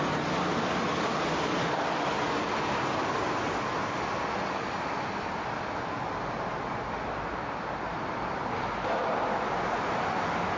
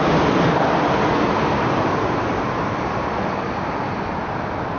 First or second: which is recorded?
first